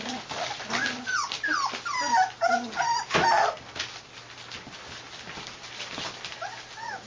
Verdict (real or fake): real